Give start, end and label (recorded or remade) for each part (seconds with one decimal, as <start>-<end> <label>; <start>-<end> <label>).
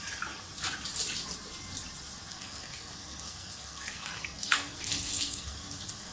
0.0-2.3 recorded; 2.3-6.1 remade